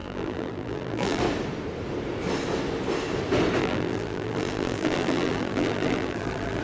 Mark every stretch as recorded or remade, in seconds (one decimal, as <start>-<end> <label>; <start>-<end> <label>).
0.0-1.2 remade; 1.2-3.6 recorded; 3.6-6.6 remade